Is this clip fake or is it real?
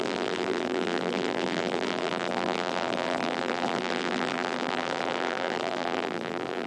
fake